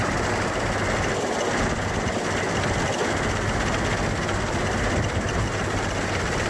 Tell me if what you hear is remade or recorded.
recorded